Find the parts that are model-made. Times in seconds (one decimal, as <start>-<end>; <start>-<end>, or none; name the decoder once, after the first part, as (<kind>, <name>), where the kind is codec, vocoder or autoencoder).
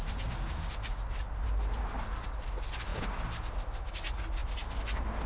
none